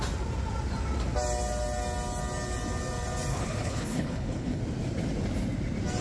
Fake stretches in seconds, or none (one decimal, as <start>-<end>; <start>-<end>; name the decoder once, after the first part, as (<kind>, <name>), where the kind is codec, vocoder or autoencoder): 3.3-4.6 (codec, HILCodec)